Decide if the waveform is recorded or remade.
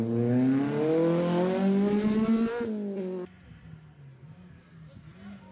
recorded